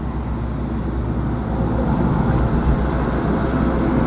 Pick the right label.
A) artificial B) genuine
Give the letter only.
B